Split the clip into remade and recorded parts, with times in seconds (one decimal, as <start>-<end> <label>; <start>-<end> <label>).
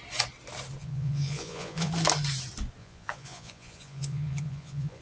0.0-0.8 recorded; 0.8-1.9 remade; 1.9-2.8 recorded; 2.8-5.0 remade